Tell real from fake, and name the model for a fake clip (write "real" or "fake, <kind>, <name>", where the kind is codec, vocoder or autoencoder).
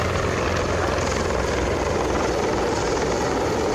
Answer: real